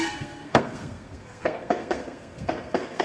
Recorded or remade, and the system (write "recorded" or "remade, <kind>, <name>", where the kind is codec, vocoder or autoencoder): remade, codec, SNAC